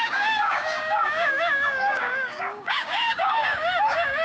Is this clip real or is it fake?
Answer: fake